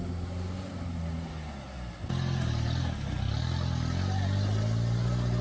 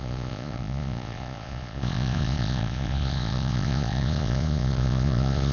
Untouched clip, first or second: first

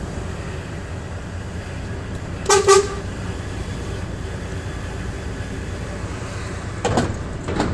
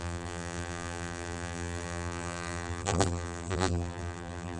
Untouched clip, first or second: first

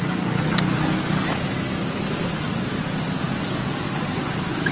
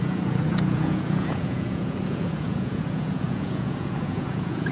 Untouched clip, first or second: first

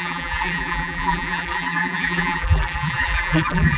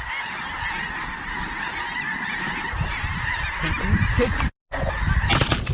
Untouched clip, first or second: second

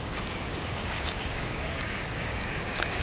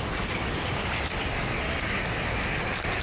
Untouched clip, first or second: second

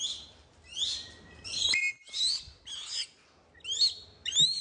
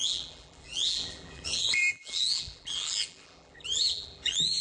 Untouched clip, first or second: first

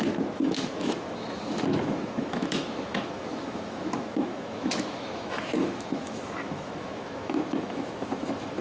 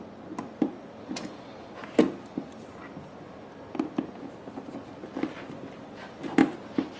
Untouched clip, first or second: second